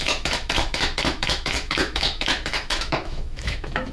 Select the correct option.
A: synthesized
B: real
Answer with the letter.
A